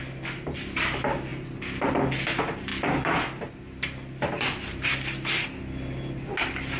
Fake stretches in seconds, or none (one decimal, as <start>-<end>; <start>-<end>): none